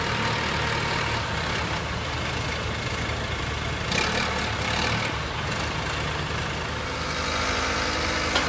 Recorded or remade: recorded